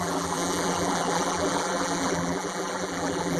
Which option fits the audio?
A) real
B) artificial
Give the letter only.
B